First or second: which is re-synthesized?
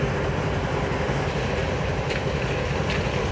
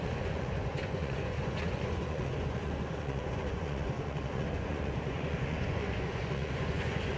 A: second